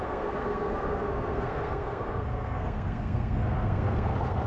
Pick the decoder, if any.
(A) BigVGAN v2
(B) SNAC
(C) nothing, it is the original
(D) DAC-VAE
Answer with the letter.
B